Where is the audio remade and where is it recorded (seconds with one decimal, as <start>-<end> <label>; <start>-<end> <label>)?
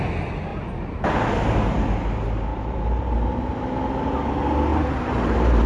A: 0.0-2.5 recorded; 2.5-3.6 remade; 3.6-4.7 recorded; 4.7-5.7 remade